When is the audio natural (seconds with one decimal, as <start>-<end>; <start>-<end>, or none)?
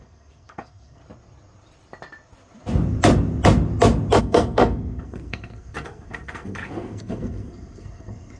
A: 1.0-4.2